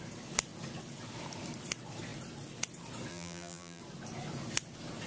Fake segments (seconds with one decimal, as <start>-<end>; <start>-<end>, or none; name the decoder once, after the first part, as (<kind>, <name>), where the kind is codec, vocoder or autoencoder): 3.1-3.8 (vocoder, BigVGAN v2)